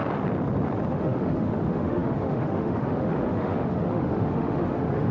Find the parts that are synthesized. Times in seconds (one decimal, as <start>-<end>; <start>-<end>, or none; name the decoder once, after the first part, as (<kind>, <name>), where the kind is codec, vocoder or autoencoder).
0.9-5.1 (autoencoder, DAC-VAE)